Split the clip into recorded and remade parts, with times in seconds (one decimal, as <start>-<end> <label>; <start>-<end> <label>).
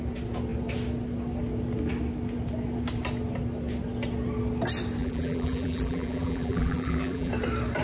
0.0-5.0 recorded; 5.0-7.3 remade; 7.3-7.8 recorded